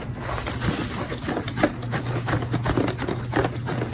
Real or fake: real